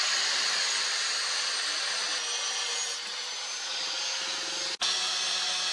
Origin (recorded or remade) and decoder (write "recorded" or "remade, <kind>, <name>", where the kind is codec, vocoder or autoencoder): recorded